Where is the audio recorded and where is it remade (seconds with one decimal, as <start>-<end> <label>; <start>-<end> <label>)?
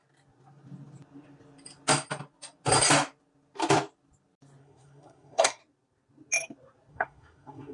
0.0-4.6 recorded; 4.6-5.6 remade; 5.6-6.9 recorded; 6.9-7.7 remade